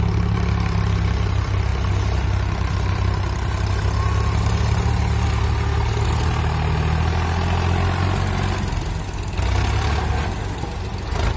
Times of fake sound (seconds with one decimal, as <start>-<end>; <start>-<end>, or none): none